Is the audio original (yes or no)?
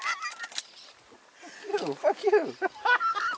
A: yes